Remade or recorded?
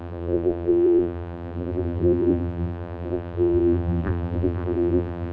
remade